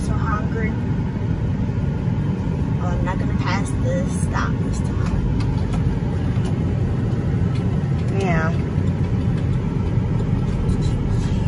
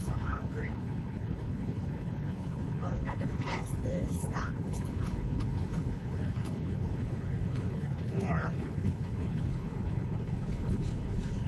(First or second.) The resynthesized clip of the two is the second